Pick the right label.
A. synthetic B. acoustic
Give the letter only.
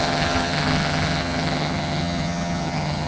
A